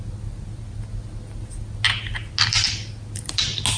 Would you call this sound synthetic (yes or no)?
no